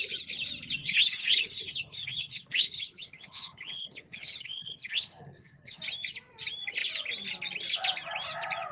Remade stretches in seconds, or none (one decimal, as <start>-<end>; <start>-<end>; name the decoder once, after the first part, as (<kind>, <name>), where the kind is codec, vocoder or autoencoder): 0.8-5.8 (codec, HILCodec)